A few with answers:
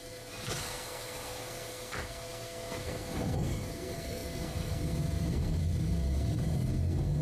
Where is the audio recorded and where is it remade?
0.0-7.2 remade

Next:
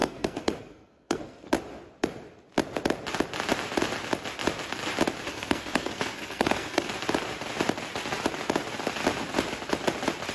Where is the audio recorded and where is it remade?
0.0-1.5 remade; 1.5-5.3 recorded; 5.3-6.9 remade; 6.9-10.3 recorded